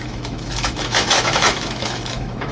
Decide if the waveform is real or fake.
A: fake